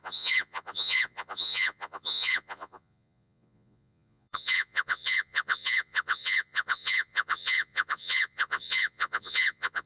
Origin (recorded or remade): remade